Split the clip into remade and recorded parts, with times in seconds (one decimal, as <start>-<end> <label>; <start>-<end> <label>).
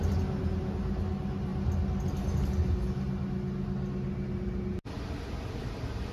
0.0-6.1 recorded